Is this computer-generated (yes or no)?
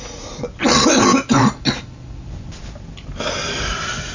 no